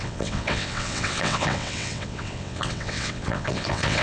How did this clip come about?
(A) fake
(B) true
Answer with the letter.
A